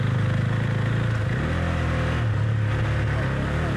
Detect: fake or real real